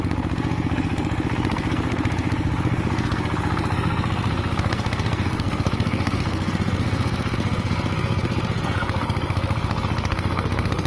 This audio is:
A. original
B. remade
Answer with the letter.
B